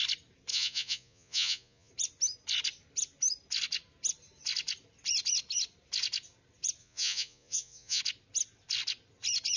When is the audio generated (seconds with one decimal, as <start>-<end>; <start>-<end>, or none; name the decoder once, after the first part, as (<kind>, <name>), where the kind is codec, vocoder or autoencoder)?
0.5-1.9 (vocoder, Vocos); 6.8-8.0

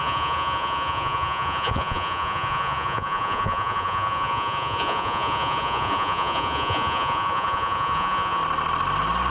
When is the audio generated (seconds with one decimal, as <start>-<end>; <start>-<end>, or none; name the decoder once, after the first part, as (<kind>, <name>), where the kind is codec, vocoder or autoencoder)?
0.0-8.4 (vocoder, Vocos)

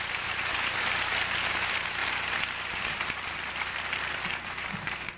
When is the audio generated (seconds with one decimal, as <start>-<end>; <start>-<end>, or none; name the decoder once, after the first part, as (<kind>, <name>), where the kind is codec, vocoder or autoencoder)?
none

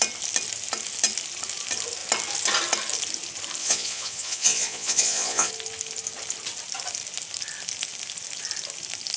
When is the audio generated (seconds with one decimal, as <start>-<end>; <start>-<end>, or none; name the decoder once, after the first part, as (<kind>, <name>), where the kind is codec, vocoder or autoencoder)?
3.6-5.5 (vocoder, Vocos)

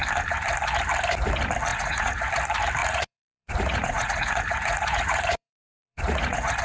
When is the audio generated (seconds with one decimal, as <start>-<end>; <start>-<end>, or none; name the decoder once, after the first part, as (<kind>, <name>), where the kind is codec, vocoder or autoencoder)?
1.7-2.3 (vocoder, Vocos); 2.8-6.6